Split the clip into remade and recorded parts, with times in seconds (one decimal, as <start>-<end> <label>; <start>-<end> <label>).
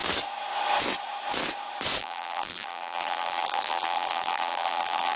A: 0.0-2.0 recorded; 2.0-5.2 remade